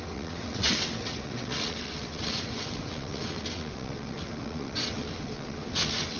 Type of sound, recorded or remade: remade